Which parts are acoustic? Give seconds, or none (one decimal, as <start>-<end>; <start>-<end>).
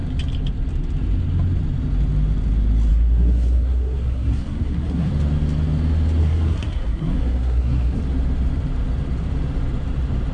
0.0-2.9; 5.1-6.2; 8.0-10.3